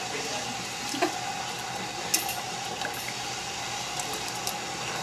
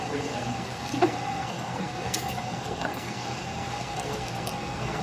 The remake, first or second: second